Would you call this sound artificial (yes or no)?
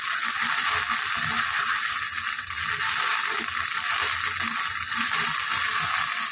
no